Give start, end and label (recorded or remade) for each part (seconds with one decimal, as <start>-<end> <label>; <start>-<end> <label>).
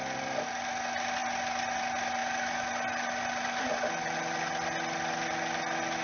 0.0-6.0 recorded